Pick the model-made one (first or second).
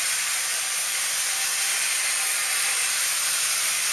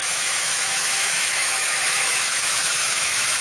second